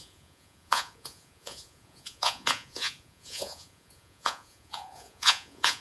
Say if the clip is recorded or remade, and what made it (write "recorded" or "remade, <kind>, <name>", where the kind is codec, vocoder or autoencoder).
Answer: remade, vocoder, Vocos